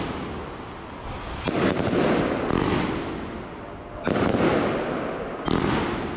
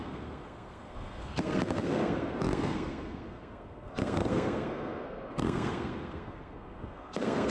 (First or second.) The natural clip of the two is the first